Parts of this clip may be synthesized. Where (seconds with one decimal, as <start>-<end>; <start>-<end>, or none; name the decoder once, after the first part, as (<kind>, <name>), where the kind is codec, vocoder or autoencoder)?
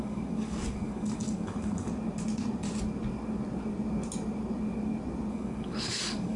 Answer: 0.0-1.9 (codec, DAC); 5.3-6.4